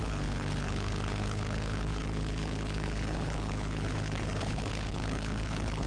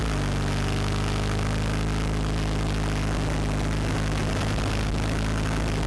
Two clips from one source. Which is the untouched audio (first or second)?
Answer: second